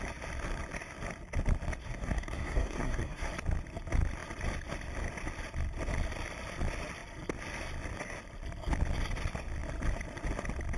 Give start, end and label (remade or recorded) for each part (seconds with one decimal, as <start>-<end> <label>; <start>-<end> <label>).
0.0-1.8 recorded; 1.8-3.3 remade; 3.3-10.8 recorded